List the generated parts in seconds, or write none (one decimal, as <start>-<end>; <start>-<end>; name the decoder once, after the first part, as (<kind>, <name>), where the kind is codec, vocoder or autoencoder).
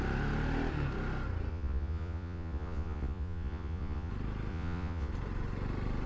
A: 1.5-4.1 (vocoder, Vocos); 4.5-5.1